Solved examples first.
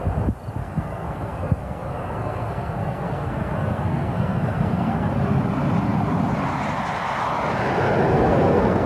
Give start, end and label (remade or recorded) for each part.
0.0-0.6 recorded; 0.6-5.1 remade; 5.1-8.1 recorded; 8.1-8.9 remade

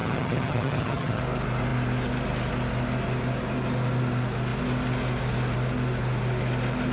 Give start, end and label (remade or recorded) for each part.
0.0-1.2 remade; 1.2-6.9 recorded

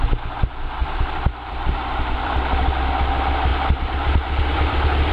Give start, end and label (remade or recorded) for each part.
0.0-0.8 recorded; 0.8-2.6 remade; 2.6-3.5 recorded; 3.5-5.1 remade

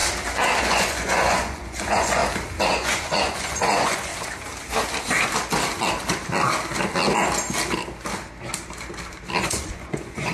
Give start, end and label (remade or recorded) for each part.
0.0-0.6 recorded; 0.6-2.2 remade; 2.2-2.7 recorded; 2.7-4.1 remade; 4.1-9.4 recorded; 9.4-10.3 remade